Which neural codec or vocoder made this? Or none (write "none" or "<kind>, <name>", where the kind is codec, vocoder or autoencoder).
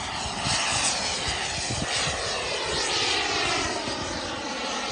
none